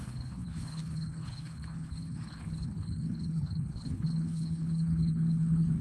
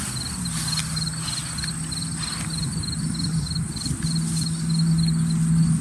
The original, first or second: second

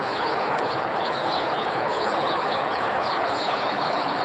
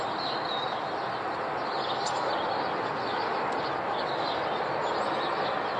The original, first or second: second